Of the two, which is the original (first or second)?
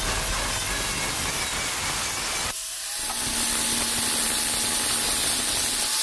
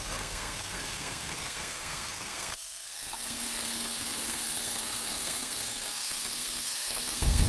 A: first